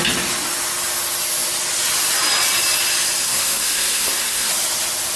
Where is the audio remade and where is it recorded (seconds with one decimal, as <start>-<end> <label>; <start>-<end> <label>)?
0.0-3.2 recorded; 3.2-4.5 remade; 4.5-5.2 recorded